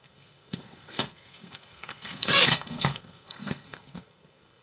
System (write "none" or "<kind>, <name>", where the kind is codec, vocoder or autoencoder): codec, SNAC